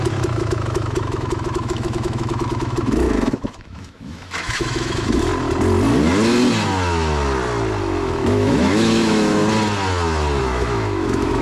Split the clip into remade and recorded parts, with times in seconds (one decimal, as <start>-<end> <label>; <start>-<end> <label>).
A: 0.0-5.3 remade; 5.3-7.8 recorded; 7.8-9.4 remade; 9.4-10.4 recorded; 10.4-11.4 remade